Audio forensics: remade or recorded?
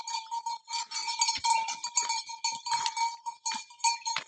recorded